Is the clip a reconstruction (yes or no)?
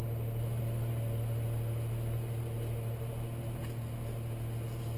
no